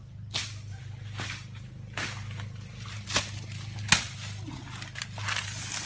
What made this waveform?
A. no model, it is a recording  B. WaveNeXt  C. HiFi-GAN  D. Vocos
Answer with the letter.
A